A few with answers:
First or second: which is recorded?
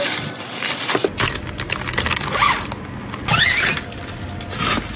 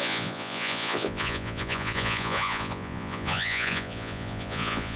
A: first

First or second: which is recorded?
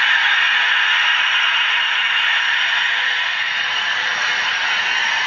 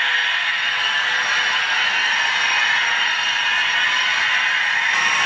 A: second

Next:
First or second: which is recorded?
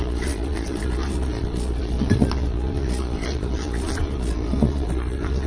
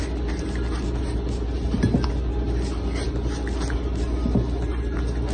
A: second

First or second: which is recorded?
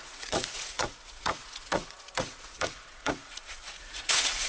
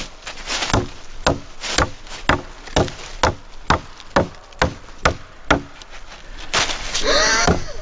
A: second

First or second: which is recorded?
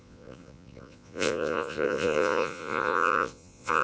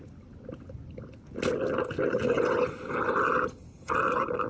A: second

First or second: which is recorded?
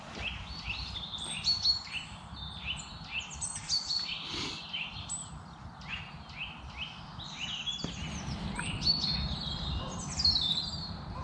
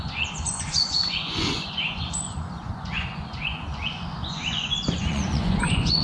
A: first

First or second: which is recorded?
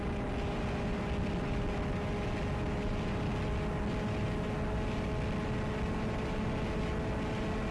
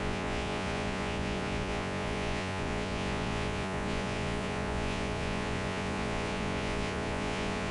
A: first